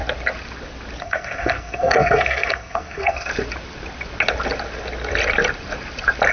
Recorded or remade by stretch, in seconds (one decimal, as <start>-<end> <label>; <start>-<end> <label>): 0.0-1.0 recorded; 1.0-3.3 remade; 3.3-6.3 recorded